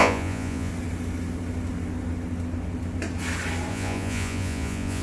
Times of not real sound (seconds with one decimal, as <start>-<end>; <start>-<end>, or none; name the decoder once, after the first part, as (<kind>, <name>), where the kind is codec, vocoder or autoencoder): 0.0-0.7 (vocoder, Vocos); 3.7-5.0